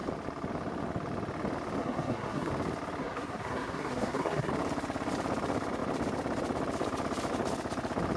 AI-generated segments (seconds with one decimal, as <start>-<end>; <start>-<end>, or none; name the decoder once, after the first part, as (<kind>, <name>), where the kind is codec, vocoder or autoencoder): 1.8-2.5 (codec, SNAC); 3.0-4.5